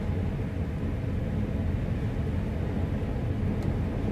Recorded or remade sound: recorded